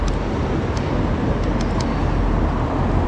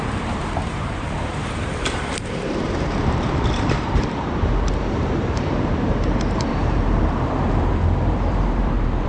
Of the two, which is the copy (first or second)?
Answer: second